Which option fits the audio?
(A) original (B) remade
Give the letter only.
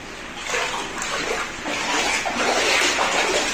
A